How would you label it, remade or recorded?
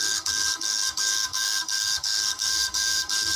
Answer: remade